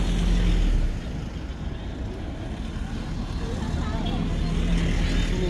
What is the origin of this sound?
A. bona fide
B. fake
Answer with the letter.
A